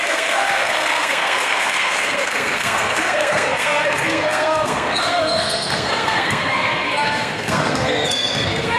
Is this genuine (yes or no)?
no